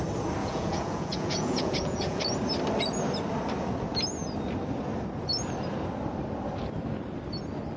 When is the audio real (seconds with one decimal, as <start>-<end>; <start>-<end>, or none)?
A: 0.0-0.4; 2.2-7.8